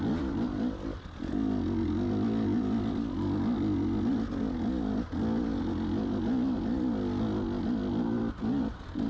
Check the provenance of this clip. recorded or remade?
recorded